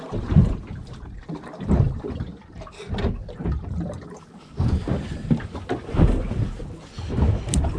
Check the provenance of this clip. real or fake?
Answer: real